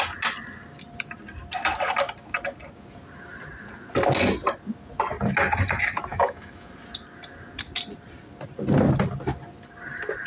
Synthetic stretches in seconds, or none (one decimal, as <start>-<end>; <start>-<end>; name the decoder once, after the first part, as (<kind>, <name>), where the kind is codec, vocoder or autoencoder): 6.1-6.7 (autoencoder, DAC-VAE)